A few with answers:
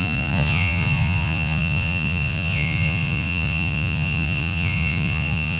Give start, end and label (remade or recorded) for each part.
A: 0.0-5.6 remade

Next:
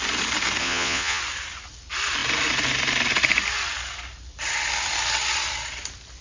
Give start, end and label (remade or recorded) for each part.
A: 0.0-0.6 recorded; 0.6-1.2 remade; 1.2-6.2 recorded

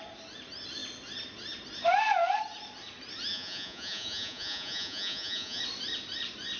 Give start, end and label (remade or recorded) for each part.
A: 0.0-3.3 recorded; 3.3-5.6 remade; 5.6-6.6 recorded

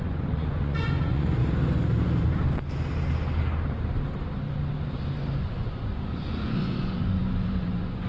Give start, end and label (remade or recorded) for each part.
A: 0.0-1.4 remade; 1.4-5.1 recorded; 5.1-8.1 remade